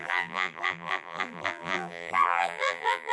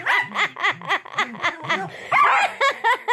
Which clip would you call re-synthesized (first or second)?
first